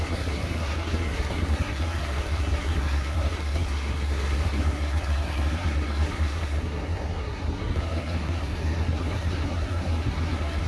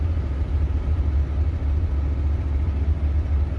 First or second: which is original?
second